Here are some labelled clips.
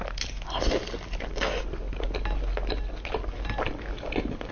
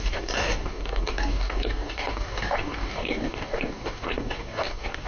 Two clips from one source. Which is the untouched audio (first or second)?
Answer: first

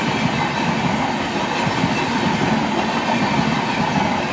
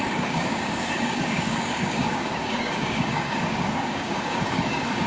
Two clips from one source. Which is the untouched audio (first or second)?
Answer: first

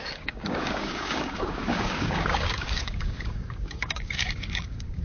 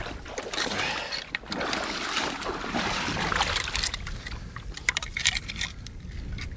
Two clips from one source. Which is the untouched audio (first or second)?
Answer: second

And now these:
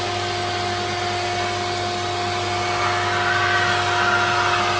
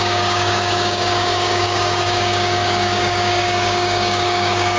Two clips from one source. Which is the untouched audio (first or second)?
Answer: first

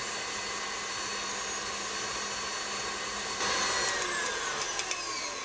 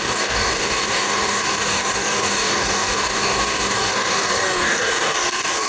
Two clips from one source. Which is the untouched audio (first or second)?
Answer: first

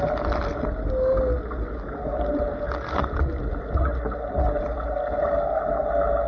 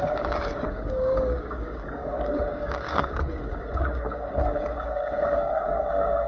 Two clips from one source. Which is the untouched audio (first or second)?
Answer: first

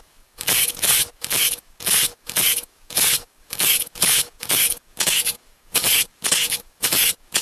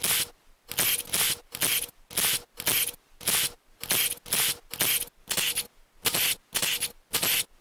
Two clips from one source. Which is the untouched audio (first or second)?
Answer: second